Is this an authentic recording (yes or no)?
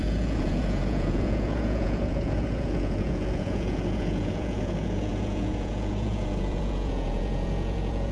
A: no